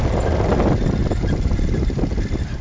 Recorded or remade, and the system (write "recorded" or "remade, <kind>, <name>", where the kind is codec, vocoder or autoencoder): recorded